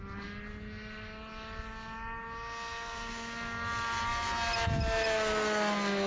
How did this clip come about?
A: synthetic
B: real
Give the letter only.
B